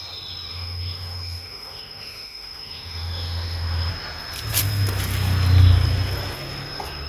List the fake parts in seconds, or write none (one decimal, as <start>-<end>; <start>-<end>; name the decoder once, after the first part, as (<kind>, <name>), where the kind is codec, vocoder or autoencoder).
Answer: 0.5-3.9 (autoencoder, DAC-VAE)